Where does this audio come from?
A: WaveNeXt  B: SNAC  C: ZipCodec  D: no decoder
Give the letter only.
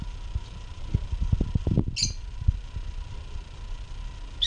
D